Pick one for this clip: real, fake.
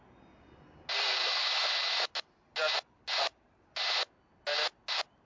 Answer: real